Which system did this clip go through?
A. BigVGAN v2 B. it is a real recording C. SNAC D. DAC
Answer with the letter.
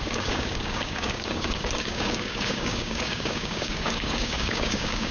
D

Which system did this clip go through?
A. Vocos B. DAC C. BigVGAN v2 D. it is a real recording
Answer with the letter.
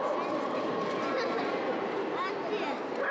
D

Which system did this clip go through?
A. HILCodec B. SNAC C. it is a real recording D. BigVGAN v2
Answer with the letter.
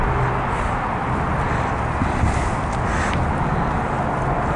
C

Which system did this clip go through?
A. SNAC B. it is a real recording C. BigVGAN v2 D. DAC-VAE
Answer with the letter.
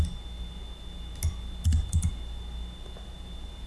B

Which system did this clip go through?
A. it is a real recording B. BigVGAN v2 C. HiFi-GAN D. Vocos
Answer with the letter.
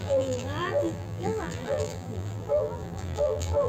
B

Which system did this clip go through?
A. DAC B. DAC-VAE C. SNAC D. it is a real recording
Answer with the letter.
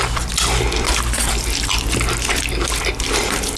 D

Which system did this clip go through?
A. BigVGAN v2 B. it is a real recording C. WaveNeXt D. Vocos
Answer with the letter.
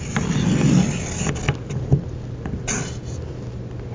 B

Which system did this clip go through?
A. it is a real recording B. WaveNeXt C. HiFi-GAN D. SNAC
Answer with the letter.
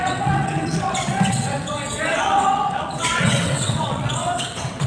B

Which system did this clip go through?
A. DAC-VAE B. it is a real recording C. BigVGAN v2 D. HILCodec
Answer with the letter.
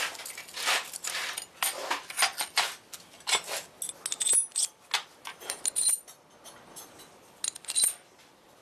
B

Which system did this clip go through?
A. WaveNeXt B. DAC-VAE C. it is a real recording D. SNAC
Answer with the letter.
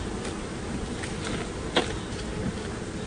C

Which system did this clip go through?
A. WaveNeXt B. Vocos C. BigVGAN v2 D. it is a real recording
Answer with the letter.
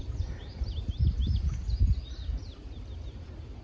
D